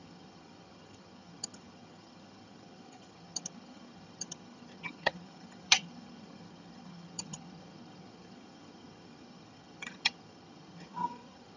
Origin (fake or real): fake